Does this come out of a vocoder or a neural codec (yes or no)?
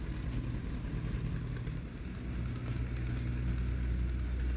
no